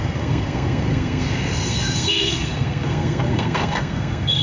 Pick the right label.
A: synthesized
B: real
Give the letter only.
A